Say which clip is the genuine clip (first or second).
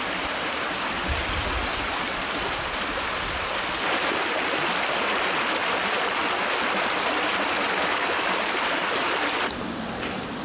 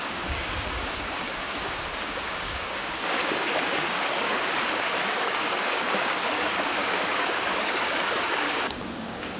first